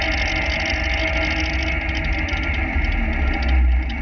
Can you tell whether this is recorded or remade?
recorded